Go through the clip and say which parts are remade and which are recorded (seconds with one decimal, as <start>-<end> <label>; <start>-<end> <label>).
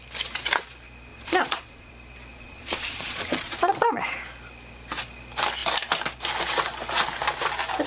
0.0-1.1 recorded; 1.1-1.9 remade; 1.9-2.3 recorded; 2.3-4.0 remade; 4.0-7.9 recorded